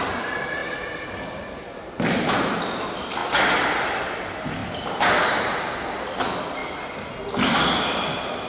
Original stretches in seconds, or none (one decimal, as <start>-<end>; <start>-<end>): 0.0-4.6; 5.3-8.5